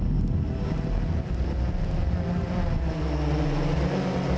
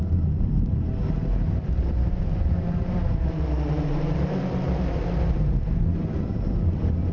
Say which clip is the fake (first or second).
second